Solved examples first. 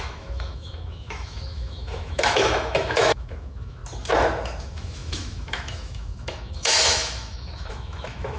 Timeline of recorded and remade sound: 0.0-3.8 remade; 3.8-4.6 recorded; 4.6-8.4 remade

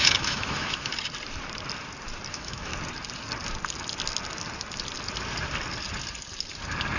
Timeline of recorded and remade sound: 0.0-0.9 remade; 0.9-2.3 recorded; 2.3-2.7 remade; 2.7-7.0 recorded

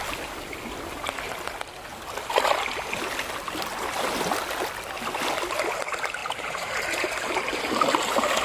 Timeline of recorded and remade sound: 0.0-6.2 recorded; 6.2-7.7 remade; 7.7-8.4 recorded